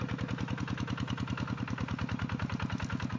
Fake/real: real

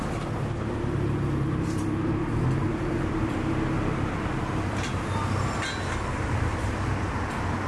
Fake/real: real